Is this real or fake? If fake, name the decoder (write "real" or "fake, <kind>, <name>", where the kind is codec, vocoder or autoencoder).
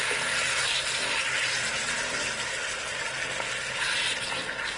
real